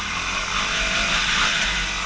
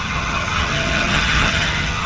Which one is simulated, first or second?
second